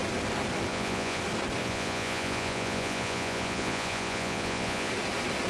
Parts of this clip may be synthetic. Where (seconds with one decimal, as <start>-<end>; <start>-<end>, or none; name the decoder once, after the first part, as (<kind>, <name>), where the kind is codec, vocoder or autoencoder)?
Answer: 0.7-1.2 (vocoder, Vocos); 1.6-4.9